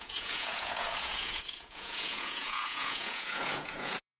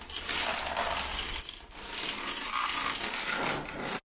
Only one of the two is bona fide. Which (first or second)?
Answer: second